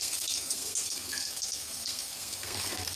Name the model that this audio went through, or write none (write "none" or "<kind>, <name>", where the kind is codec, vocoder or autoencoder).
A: codec, SNAC